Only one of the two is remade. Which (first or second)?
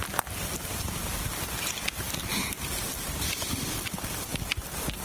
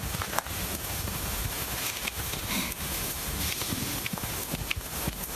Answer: second